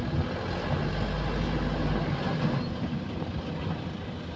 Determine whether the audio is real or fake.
real